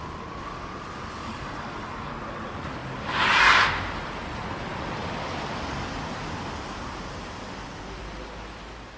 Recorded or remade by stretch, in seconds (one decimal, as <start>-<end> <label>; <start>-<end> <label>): 0.0-1.2 recorded; 1.2-2.1 remade; 2.1-9.0 recorded